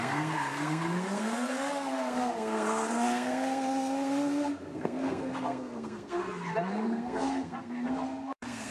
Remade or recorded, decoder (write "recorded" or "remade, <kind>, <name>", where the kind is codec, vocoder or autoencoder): remade, codec, SNAC